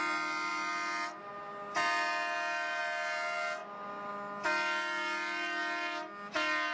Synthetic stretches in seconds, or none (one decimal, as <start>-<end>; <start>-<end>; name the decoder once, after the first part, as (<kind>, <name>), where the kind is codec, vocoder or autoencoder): none